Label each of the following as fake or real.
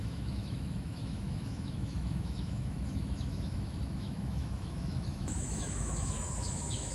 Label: fake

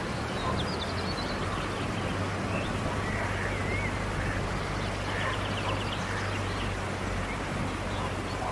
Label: real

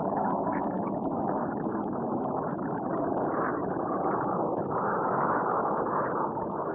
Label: fake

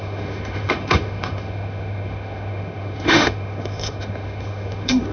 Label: fake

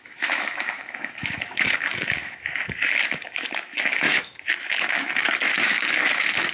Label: fake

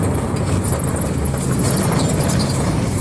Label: real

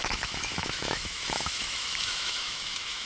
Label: fake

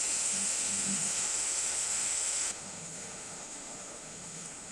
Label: fake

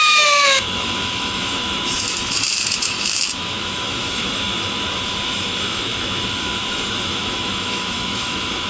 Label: fake